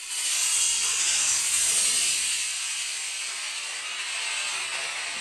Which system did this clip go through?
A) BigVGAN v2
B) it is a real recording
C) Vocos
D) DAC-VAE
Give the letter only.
B